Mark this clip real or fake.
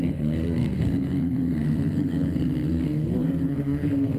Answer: fake